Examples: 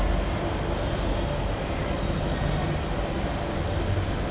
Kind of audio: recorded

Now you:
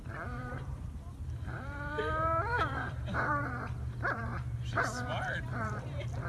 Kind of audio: remade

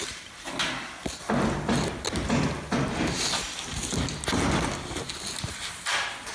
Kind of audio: recorded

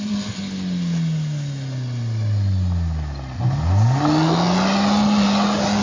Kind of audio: recorded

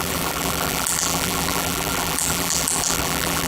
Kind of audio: remade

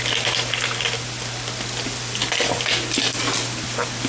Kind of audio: recorded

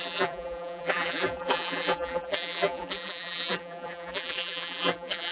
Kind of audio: remade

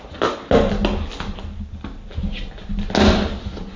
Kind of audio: recorded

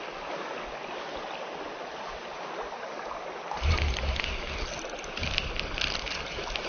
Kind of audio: recorded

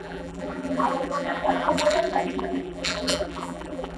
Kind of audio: remade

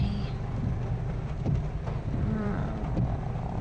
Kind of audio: remade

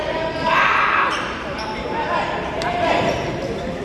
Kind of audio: recorded